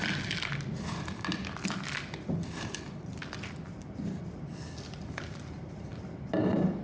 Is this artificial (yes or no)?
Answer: no